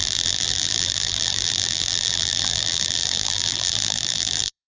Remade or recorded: remade